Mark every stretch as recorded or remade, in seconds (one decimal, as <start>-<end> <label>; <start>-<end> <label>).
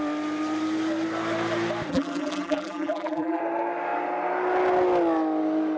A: 0.0-1.9 recorded; 1.9-3.4 remade; 3.4-5.8 recorded